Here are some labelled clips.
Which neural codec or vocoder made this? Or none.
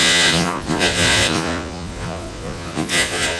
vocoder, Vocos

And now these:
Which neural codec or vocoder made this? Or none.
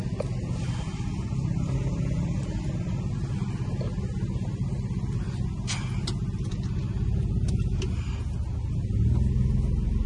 none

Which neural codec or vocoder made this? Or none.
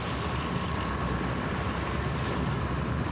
none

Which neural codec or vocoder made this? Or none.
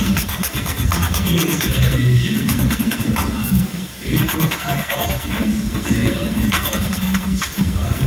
codec, SNAC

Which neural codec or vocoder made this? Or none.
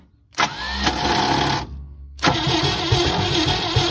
none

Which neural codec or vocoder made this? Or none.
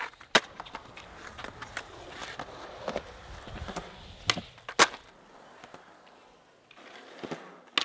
none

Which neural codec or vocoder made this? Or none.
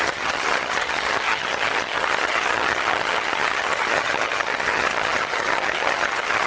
vocoder, HiFi-GAN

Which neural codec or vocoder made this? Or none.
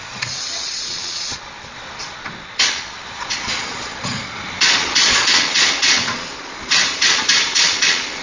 vocoder, Vocos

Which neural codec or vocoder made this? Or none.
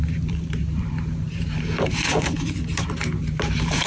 vocoder, BigVGAN v2